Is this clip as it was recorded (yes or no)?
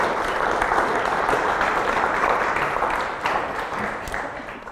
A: no